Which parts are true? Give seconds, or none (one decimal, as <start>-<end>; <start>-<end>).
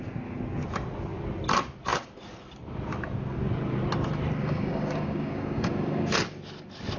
0.0-4.4; 6.1-7.0